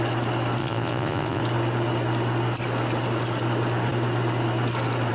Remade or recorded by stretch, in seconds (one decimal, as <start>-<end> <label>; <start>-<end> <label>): 0.0-0.6 recorded; 0.6-1.4 remade; 1.4-5.1 recorded